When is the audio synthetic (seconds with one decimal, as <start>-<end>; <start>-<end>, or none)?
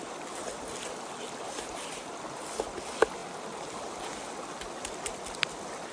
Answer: none